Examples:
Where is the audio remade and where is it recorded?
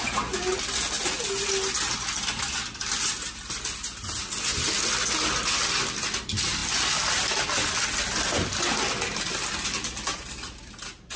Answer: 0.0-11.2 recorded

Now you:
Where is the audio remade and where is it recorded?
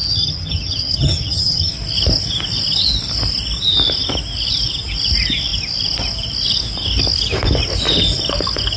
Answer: 0.0-1.7 remade; 1.7-8.8 recorded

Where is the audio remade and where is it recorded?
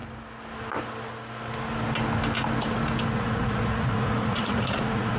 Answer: 0.0-3.1 recorded; 3.1-5.2 remade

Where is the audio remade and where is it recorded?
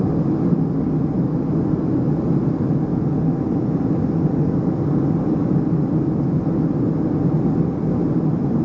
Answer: 0.0-8.6 recorded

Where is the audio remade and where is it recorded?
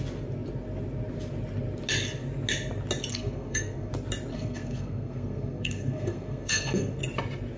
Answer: 0.0-3.1 recorded; 3.1-3.9 remade; 3.9-4.3 recorded; 4.3-7.0 remade; 7.0-7.6 recorded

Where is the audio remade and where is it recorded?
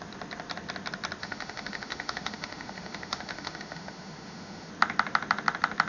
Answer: 0.0-1.2 recorded; 1.2-4.7 remade; 4.7-5.9 recorded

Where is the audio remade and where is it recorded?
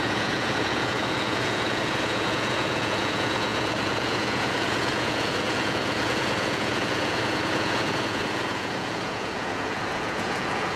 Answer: 0.0-10.8 remade